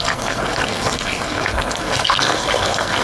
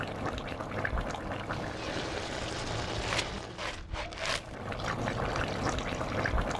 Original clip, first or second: second